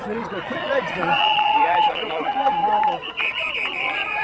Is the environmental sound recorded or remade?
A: remade